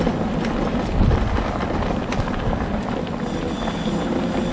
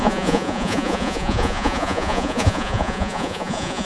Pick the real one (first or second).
first